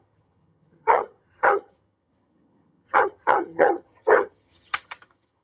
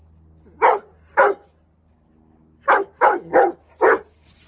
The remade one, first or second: first